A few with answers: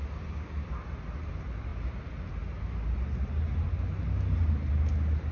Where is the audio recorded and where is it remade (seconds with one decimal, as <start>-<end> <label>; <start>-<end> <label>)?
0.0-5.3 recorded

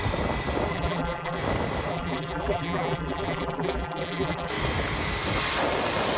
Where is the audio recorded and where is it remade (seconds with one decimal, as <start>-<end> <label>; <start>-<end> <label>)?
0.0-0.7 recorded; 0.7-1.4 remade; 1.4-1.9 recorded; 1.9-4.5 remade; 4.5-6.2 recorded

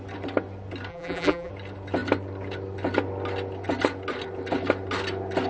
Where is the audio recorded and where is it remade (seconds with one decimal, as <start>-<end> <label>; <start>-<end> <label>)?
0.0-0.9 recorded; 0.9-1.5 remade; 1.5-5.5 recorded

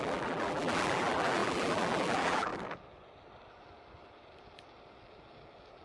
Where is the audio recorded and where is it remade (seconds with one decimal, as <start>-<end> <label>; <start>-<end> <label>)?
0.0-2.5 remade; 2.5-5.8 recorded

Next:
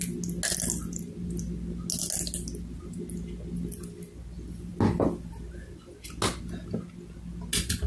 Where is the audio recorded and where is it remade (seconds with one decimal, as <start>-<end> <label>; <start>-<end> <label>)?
0.0-7.9 recorded